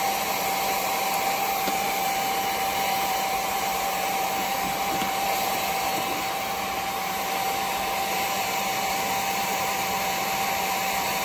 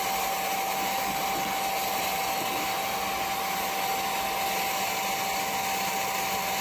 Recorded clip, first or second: second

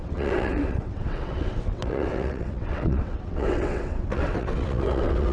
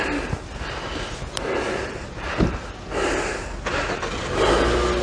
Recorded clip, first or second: second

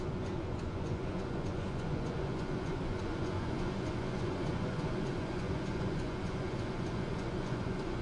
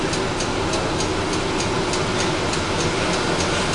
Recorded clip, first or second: second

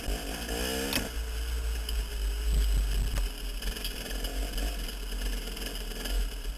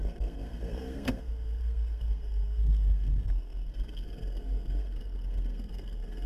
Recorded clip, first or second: first